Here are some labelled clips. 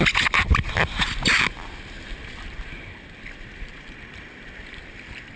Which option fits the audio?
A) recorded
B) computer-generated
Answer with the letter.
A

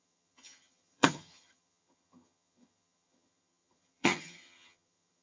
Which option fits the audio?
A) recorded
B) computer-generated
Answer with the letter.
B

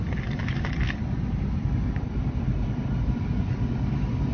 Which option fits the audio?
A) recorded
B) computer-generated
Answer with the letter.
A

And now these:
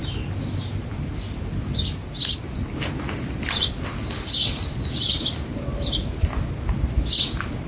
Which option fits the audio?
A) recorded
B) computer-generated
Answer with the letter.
A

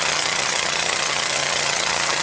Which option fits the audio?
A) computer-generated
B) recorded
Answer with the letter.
A